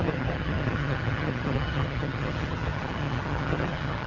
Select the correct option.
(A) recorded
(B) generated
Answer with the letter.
B